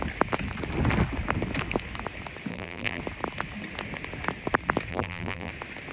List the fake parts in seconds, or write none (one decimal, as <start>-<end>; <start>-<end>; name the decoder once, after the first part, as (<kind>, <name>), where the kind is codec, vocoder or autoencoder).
2.5-3.0 (vocoder, BigVGAN v2); 4.9-5.5

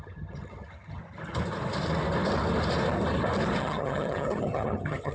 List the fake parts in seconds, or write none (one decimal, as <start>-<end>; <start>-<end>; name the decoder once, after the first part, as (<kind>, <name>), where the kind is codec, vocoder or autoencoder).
0.0-1.0 (vocoder, HiFi-GAN); 3.6-5.1

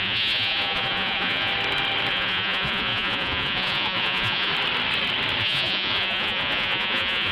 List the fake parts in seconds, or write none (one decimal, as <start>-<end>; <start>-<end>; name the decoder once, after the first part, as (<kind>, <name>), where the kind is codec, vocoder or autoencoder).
0.0-1.5 (vocoder, Vocos); 2.1-4.5; 5.4-7.3